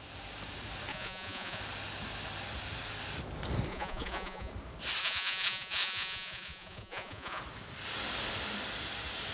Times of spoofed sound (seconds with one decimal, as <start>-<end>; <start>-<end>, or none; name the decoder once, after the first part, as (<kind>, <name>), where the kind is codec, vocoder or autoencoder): 0.9-1.6 (vocoder, Vocos); 3.7-4.5; 5.0-7.4